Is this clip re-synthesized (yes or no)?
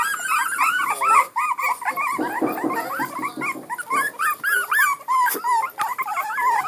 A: yes